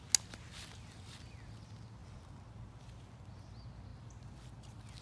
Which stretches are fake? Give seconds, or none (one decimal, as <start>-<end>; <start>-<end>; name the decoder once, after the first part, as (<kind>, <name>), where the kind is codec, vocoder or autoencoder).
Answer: none

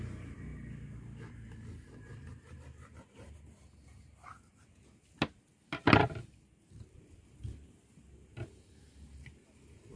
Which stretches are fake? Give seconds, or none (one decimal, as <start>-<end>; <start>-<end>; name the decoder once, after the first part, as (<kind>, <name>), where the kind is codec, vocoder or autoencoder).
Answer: none

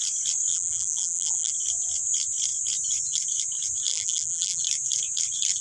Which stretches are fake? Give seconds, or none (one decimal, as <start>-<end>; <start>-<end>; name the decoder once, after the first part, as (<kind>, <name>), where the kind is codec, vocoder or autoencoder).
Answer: 0.5-1.5 (vocoder, BigVGAN v2); 3.9-4.6

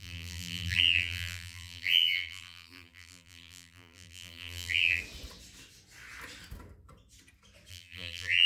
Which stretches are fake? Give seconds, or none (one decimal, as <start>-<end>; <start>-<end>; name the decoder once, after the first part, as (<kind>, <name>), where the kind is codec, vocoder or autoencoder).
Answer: 0.0-5.0 (vocoder, BigVGAN v2); 7.7-8.5